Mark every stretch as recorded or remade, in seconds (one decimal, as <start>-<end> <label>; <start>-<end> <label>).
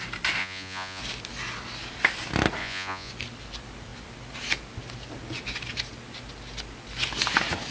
0.0-0.4 recorded; 0.4-1.0 remade; 1.0-2.6 recorded; 2.6-3.1 remade; 3.1-7.7 recorded